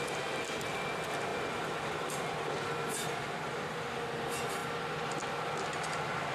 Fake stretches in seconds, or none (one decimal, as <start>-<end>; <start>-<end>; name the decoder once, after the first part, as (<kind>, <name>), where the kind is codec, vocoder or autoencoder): none